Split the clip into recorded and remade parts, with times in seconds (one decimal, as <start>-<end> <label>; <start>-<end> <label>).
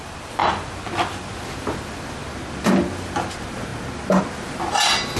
0.0-5.2 recorded